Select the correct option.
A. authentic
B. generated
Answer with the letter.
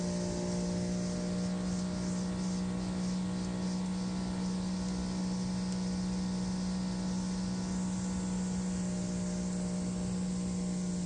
A